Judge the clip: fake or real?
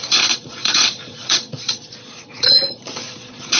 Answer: fake